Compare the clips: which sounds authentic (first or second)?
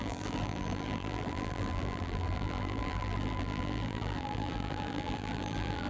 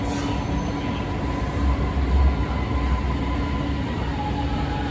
second